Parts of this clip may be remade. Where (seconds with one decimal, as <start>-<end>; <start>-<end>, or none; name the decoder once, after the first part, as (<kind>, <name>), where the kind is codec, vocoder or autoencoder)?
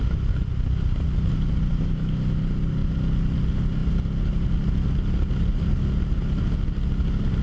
1.7-2.4 (autoencoder, DAC-VAE)